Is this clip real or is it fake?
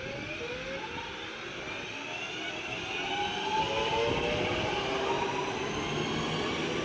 real